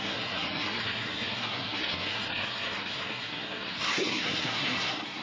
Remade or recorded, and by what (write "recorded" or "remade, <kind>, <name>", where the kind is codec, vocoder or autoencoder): remade, codec, SNAC